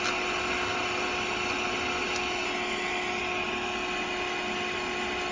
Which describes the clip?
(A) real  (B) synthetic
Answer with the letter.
A